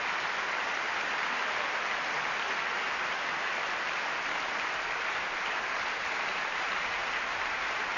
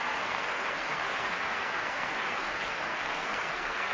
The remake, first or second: second